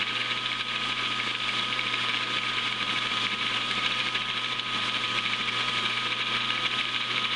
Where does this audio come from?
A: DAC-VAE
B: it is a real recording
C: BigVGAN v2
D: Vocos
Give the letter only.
C